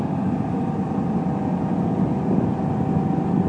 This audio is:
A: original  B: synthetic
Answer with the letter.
A